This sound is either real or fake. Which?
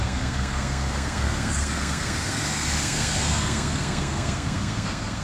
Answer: fake